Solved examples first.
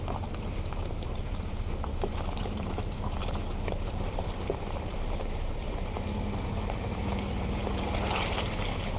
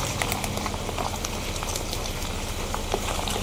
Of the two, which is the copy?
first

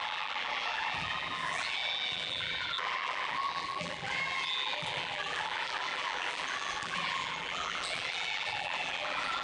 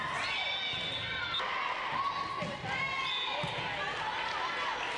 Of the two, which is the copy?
first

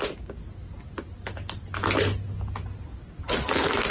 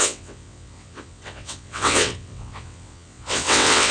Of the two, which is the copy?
second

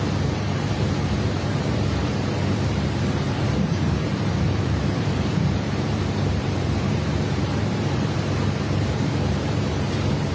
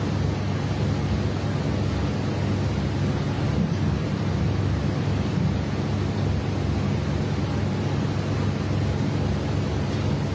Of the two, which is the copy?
first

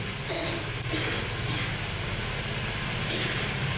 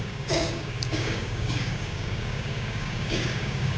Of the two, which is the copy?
second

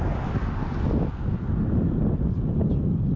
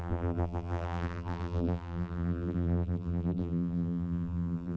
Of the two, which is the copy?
second